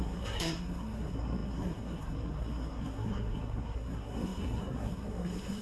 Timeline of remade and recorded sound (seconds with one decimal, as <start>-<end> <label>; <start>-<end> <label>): 0.0-5.6 remade